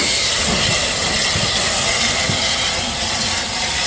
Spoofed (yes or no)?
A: no